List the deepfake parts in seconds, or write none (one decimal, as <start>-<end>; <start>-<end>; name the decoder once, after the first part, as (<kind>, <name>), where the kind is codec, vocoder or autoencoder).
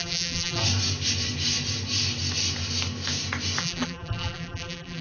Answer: 0.0-0.6 (vocoder, BigVGAN v2); 3.6-5.0